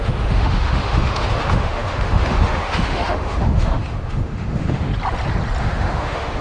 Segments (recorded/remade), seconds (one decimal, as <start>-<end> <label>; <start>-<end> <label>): 0.0-4.9 remade; 4.9-5.6 recorded; 5.6-6.4 remade